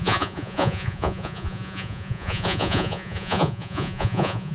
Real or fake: fake